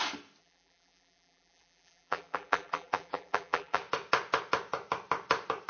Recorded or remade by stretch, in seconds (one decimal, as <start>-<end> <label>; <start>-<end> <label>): 0.0-0.4 recorded; 0.4-3.8 remade; 3.8-5.7 recorded